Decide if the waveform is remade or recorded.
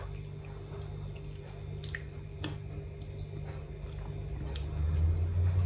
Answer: recorded